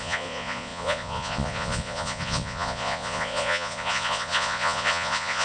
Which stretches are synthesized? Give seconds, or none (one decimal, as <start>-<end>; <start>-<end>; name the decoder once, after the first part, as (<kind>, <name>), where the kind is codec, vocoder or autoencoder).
0.0-5.4 (vocoder, Vocos)